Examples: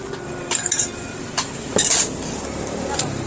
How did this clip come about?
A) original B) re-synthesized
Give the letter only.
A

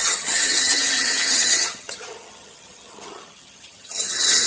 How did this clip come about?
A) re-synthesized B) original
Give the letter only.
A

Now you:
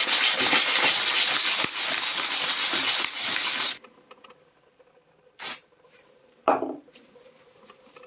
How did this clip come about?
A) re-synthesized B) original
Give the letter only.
B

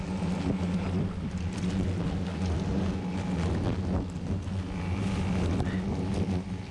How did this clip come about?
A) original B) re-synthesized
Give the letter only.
A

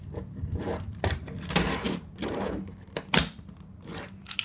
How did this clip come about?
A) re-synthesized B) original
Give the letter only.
A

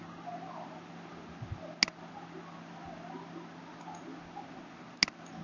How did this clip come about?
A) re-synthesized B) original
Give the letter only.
B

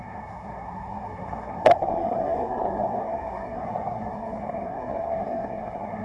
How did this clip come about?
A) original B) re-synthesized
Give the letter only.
B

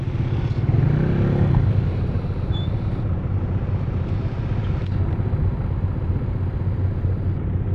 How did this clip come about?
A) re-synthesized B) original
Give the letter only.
B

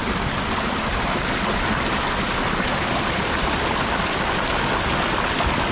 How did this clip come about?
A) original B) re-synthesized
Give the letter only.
A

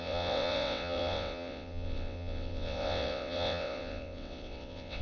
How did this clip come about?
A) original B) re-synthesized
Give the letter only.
B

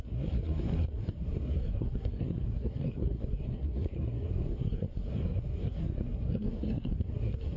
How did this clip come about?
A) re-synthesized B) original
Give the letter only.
A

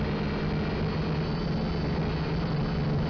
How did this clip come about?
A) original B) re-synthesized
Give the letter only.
A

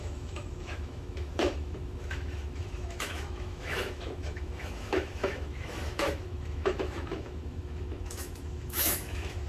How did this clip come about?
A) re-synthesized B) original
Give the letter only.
A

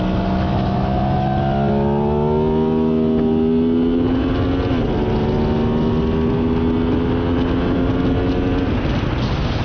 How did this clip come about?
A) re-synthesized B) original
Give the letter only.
B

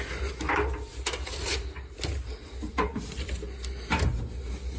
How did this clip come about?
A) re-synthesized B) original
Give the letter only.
B